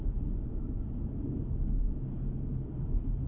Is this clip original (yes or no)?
yes